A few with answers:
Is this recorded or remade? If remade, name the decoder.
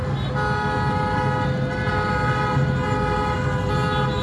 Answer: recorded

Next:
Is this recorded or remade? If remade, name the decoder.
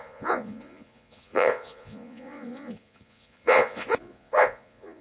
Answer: remade, vocoder, Vocos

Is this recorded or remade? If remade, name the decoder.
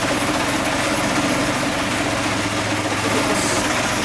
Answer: recorded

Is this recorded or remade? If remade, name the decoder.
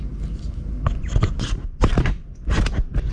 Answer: recorded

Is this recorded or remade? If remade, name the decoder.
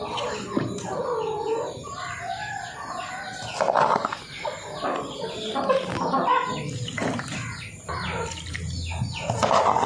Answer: recorded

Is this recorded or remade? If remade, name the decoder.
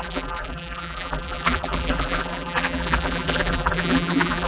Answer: remade, vocoder, BigVGAN v2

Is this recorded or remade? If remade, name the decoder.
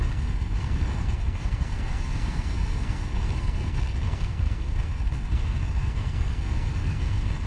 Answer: remade, codec, SNAC